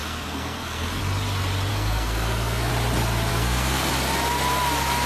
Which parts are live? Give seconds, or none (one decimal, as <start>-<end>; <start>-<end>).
1.0-1.7; 2.7-3.3; 3.9-5.1